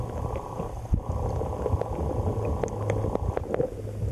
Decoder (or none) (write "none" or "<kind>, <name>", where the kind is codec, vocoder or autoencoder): none